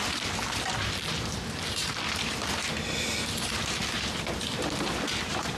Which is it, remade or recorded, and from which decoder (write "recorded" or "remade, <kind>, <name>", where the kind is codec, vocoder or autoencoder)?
recorded